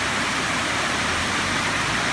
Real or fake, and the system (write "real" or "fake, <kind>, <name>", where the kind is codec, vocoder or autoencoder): fake, vocoder, BigVGAN v2